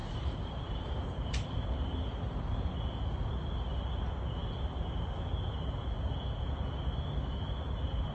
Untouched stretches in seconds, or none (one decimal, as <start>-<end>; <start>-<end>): 2.7-8.1